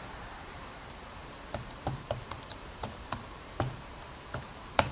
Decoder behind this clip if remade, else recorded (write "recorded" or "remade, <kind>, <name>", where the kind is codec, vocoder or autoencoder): remade, vocoder, BigVGAN v2